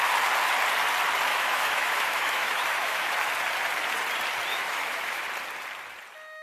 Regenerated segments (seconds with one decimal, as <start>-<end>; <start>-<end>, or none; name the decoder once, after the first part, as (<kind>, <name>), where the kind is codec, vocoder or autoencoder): 1.3-3.1 (autoencoder, DAC-VAE); 4.5-5.2